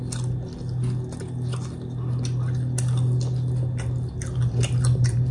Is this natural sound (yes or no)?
yes